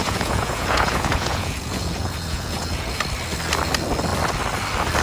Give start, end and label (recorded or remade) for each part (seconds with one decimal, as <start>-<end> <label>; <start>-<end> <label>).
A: 0.0-3.0 remade; 3.0-5.0 recorded